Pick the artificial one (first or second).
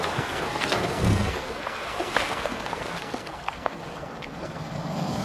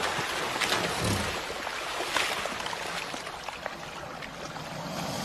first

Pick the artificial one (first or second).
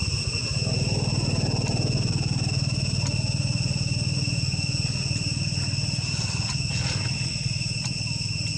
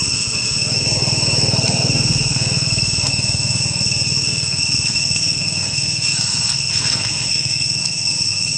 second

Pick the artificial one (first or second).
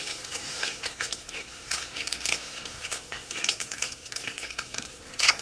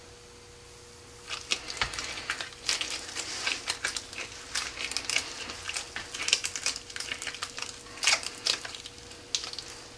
first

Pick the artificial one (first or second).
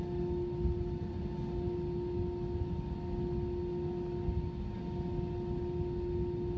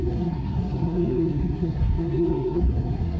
second